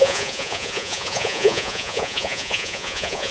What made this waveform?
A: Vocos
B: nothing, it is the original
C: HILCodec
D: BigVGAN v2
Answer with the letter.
A